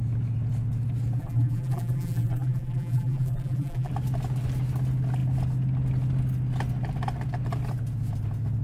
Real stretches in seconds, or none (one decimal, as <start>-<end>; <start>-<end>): 0.0-1.2; 3.9-8.6